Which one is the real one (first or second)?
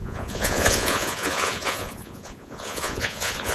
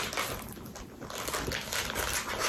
second